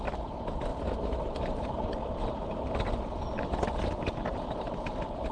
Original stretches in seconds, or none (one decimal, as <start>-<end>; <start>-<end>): 0.7-1.2; 2.0-3.4